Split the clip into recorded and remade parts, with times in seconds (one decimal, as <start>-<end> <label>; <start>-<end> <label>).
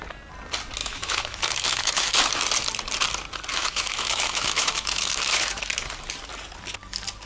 0.0-0.8 recorded; 0.8-2.1 remade; 2.1-3.5 recorded; 3.5-5.6 remade; 5.6-7.3 recorded